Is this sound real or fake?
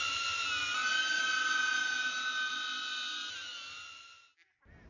real